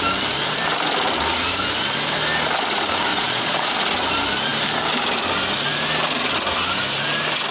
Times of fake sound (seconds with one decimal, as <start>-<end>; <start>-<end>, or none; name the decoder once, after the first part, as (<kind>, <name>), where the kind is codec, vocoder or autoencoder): 3.1-3.8 (vocoder, Vocos)